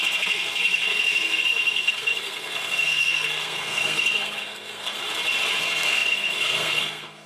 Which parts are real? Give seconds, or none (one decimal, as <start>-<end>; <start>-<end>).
5.0-5.6